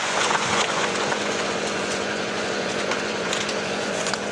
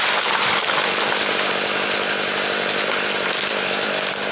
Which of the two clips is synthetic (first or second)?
first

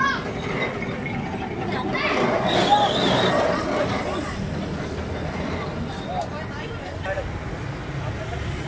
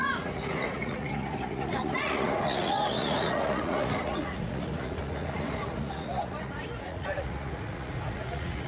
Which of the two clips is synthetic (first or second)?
second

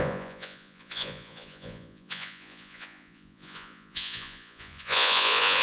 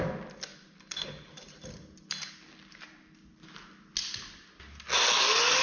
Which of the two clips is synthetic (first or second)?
first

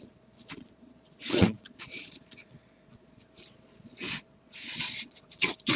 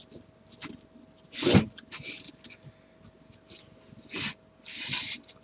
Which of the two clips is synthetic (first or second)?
first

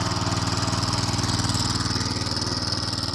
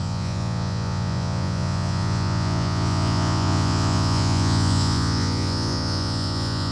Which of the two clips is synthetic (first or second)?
second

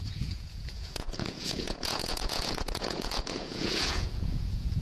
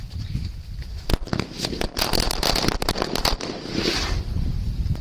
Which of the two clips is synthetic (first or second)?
first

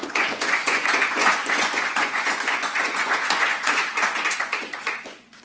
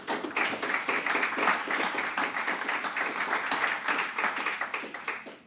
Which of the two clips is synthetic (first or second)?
first